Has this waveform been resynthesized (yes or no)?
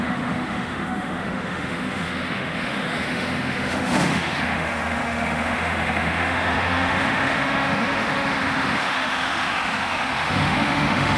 yes